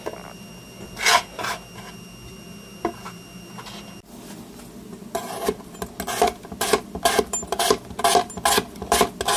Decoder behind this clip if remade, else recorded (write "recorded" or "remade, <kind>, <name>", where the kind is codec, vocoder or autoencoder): recorded